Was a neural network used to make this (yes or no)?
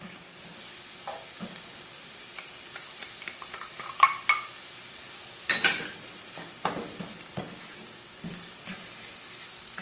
no